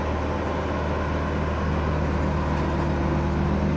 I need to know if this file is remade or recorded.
recorded